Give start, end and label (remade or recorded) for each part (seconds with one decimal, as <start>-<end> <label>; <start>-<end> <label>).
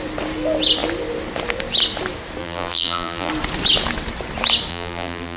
0.0-2.4 recorded; 2.4-3.3 remade; 3.3-4.7 recorded; 4.7-5.4 remade